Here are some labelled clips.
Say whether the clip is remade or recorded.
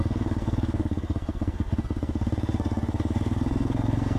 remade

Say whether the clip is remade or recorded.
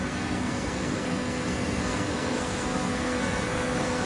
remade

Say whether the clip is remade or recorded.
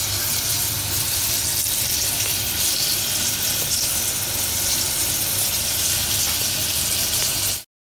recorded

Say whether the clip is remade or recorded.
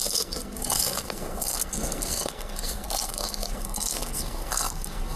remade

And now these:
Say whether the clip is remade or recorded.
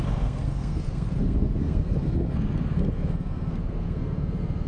remade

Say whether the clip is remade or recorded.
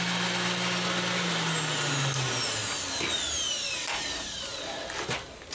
recorded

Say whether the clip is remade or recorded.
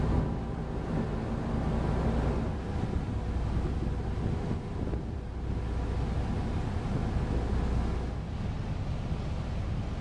recorded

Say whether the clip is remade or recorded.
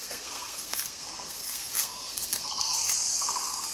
remade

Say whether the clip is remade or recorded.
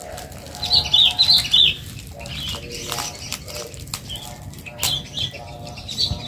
recorded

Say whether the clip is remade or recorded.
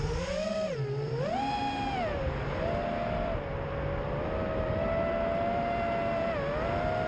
recorded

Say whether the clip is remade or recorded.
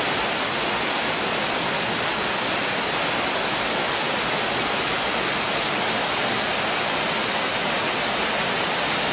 recorded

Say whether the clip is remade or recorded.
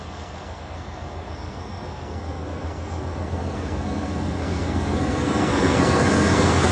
remade